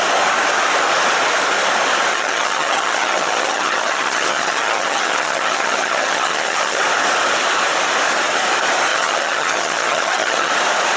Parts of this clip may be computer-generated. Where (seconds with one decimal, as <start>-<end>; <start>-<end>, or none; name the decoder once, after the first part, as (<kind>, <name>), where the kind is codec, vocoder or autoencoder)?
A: 2.1-6.8 (vocoder, HiFi-GAN); 8.9-10.5